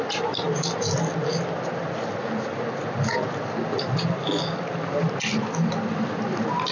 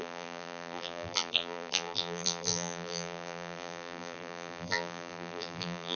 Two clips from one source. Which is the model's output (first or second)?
second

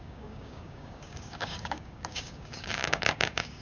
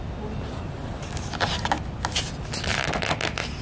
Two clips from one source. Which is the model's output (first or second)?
first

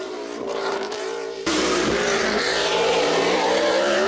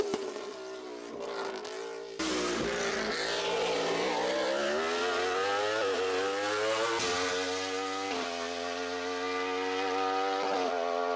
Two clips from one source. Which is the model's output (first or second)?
first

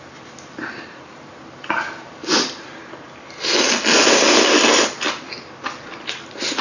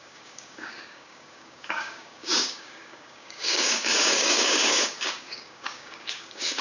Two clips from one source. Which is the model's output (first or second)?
second